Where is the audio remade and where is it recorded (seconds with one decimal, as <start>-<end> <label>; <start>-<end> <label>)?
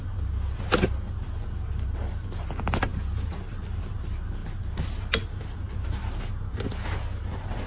0.0-7.7 recorded